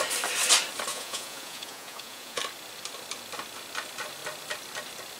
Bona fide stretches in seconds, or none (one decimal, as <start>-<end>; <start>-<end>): 0.0-0.9; 2.4-5.2